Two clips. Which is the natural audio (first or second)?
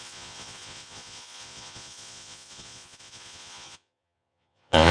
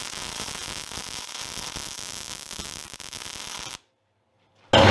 second